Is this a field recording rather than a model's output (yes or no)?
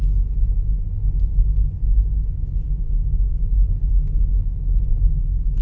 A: yes